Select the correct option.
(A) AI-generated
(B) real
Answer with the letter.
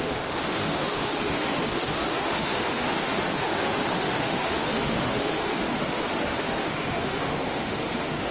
A